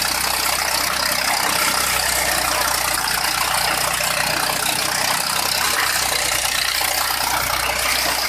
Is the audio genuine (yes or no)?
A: yes